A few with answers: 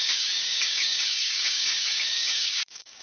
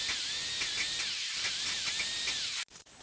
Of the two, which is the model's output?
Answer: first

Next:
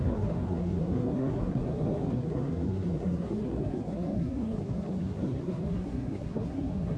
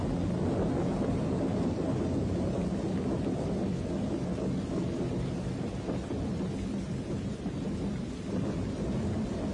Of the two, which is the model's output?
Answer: first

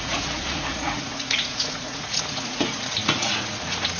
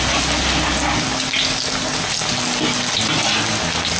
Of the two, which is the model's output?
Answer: first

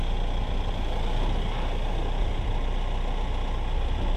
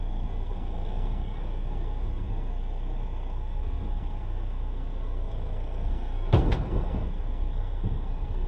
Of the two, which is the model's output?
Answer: second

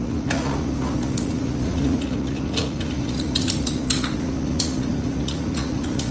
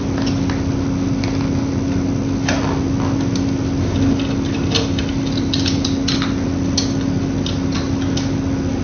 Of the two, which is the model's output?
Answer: first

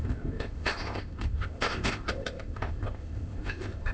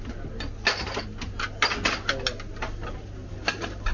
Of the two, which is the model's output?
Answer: first